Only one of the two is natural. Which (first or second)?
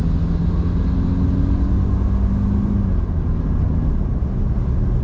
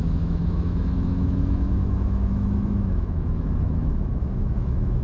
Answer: first